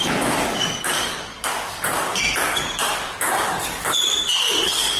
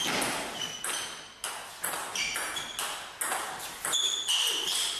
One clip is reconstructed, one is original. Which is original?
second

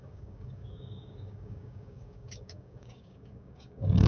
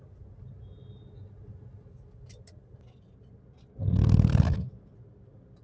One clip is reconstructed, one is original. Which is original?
second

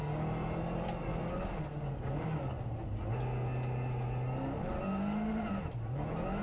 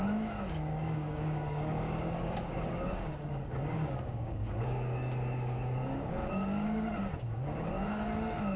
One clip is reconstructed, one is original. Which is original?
first